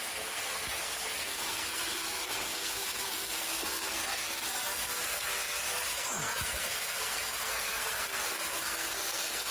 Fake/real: fake